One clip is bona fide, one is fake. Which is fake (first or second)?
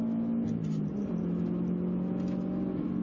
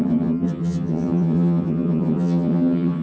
second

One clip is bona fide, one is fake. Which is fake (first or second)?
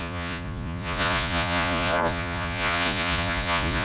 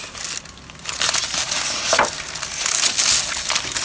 first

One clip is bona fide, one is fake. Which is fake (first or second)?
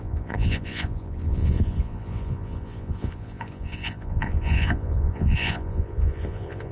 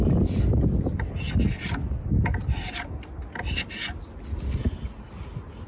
first